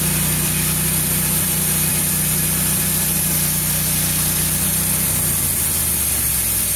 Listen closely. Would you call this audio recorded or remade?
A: recorded